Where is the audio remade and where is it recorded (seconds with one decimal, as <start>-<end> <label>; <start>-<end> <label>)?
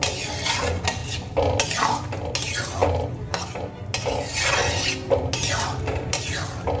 0.0-6.8 recorded